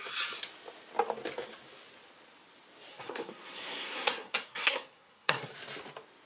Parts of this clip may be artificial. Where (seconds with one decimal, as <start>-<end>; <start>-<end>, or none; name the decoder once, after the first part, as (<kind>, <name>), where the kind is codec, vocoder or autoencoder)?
2.9-5.5 (codec, SNAC)